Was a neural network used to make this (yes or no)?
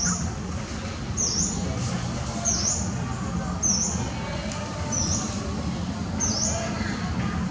no